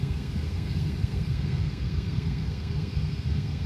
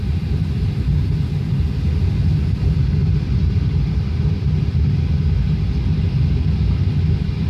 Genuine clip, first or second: second